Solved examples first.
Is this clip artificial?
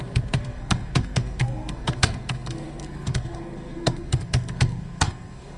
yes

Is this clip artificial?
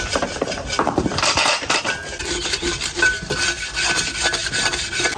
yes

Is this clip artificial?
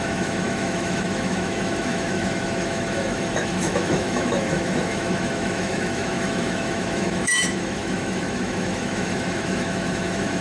yes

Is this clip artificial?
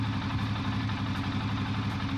no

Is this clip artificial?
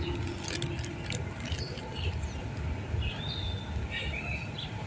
no